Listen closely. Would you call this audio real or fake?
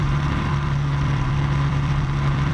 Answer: fake